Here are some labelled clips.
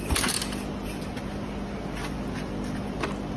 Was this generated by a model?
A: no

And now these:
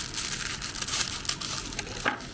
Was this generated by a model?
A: no